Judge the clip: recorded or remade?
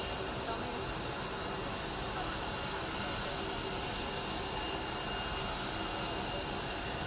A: recorded